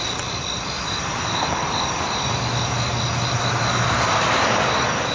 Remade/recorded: recorded